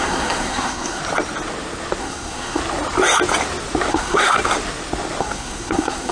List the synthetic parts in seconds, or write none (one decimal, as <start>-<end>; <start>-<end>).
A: 0.0-1.0; 2.0-2.6; 3.9-4.4; 5.2-6.1